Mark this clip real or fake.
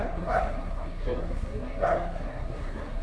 fake